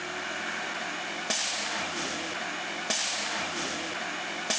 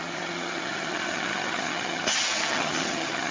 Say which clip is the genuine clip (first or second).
first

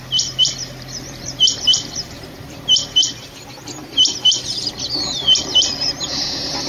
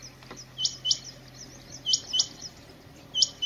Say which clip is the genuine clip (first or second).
second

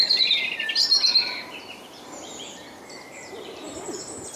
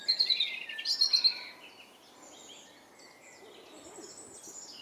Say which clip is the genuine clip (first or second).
second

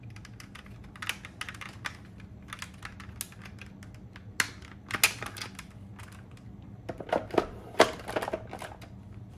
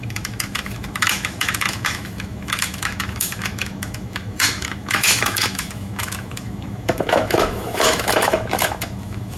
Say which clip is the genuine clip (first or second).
first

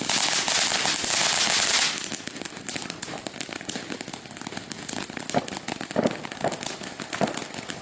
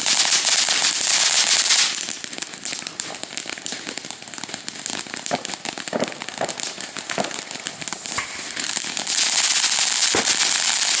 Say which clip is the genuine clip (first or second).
first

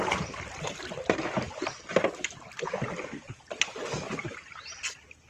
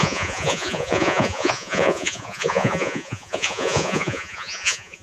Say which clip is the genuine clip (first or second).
first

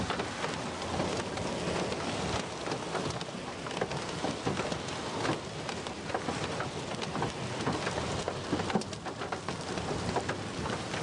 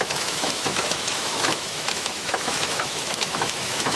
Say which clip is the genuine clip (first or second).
first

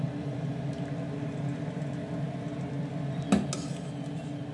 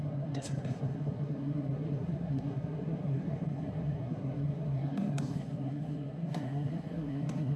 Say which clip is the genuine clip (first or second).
first